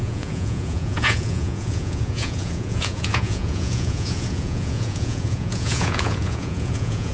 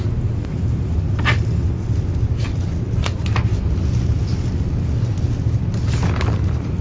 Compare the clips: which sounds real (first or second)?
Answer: second